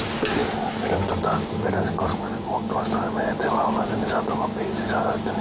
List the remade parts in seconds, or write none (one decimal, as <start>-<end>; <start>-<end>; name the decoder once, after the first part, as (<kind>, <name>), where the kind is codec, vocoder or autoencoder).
none